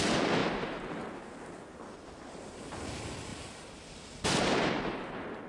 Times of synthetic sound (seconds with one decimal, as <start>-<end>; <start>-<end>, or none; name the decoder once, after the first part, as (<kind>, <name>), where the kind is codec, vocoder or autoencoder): none